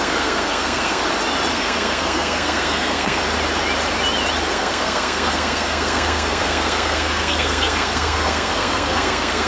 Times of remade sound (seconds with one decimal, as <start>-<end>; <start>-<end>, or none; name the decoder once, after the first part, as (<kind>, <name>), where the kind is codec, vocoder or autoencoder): 0.0-1.0 (codec, SNAC); 1.5-3.2; 4.5-9.5